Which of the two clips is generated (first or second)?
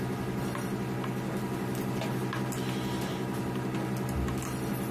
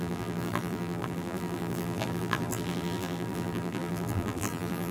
second